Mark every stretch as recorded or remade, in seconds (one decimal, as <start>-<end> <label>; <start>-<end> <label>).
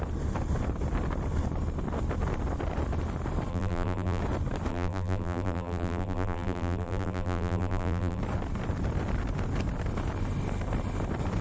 0.0-3.5 recorded; 3.5-4.2 remade; 4.2-4.7 recorded; 4.7-8.2 remade; 8.2-11.4 recorded